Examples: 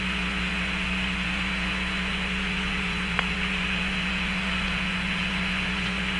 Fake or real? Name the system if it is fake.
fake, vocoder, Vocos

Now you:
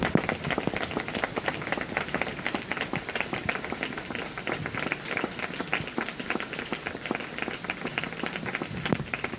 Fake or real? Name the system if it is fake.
fake, vocoder, BigVGAN v2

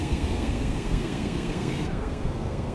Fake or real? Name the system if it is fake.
fake, codec, SNAC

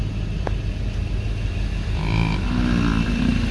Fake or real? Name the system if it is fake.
real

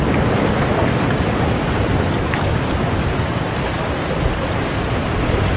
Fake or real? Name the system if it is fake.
real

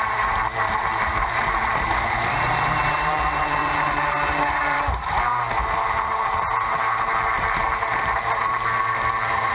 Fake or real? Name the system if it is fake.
fake, vocoder, BigVGAN v2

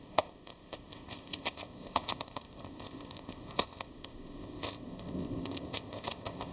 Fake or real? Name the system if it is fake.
fake, codec, ZipCodec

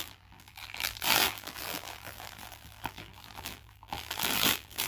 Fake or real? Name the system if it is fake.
fake, vocoder, BigVGAN v2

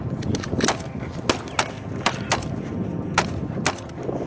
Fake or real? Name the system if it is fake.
real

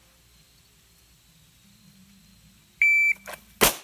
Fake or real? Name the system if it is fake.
real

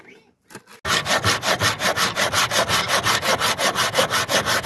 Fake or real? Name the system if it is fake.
real